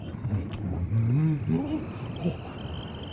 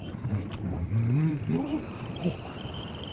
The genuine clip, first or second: first